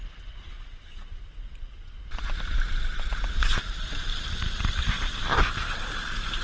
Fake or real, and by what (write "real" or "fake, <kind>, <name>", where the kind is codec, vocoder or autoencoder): real